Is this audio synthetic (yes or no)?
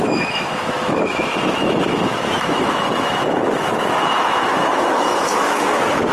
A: yes